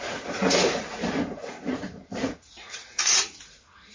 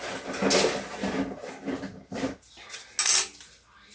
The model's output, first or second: first